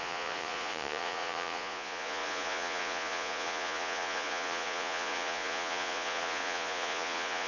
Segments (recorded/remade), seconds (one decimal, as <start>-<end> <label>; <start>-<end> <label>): 0.0-7.5 remade